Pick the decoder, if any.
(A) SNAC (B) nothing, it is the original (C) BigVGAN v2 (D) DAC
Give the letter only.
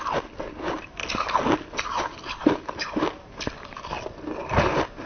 B